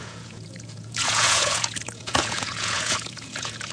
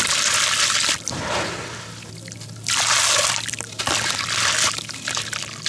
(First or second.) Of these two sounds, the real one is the second